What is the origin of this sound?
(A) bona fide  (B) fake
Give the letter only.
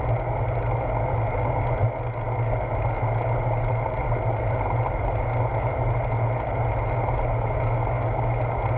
A